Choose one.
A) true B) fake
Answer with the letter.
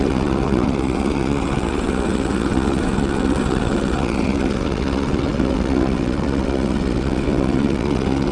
B